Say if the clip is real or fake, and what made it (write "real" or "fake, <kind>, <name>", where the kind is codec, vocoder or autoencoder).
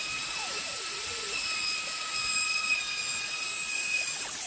fake, vocoder, Vocos